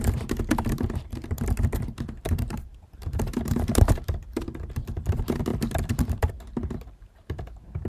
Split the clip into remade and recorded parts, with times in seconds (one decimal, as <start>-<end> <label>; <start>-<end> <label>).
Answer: 0.0-7.9 remade